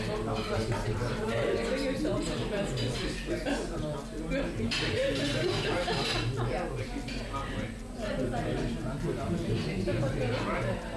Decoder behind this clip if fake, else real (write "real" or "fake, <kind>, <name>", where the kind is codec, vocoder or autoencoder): real